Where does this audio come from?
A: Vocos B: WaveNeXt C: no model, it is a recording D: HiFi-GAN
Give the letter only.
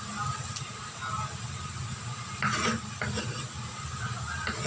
C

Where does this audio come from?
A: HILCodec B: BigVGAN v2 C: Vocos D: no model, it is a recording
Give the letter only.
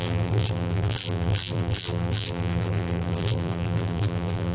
B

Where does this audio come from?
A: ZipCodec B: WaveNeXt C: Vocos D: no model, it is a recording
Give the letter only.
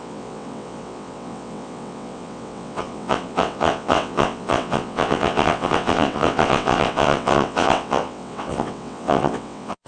B